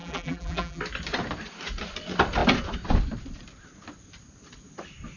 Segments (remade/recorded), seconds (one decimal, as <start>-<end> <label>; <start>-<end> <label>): 0.0-0.8 remade; 0.8-5.2 recorded